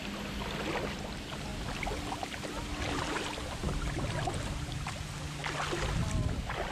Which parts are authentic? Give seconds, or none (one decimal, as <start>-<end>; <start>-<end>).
0.0-6.7